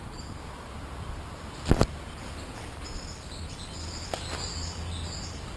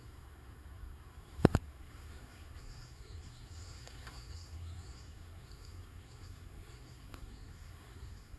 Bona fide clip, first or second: first